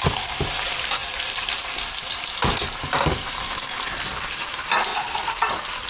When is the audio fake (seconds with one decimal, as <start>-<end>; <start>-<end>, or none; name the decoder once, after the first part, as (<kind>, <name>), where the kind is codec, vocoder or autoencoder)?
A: 0.0-1.0 (vocoder, BigVGAN v2); 3.1-5.9